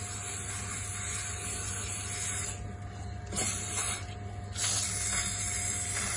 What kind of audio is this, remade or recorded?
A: recorded